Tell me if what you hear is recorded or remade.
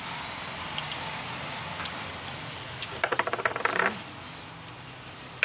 recorded